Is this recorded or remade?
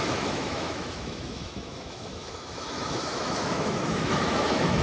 remade